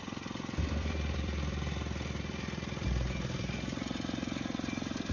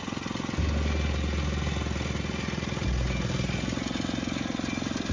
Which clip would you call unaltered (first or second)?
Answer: second